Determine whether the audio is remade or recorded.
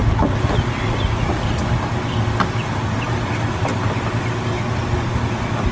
recorded